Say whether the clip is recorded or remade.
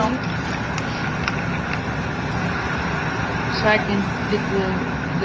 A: recorded